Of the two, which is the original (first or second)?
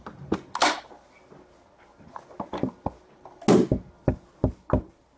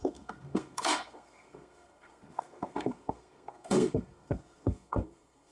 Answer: first